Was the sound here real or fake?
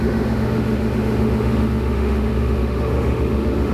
fake